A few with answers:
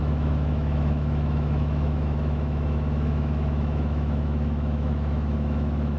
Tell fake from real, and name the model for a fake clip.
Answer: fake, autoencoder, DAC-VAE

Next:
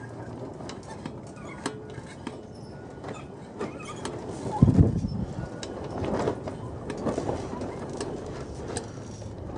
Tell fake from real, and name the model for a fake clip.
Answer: real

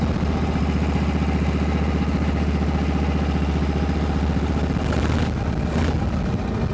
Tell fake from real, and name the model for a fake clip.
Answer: real